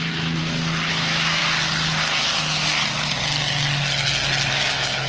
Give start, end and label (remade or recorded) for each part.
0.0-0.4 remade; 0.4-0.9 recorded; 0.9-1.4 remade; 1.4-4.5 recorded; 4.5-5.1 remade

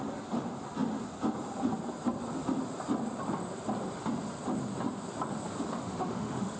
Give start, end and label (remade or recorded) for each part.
0.0-5.8 recorded; 5.8-6.6 remade